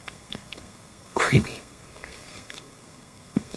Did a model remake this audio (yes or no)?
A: yes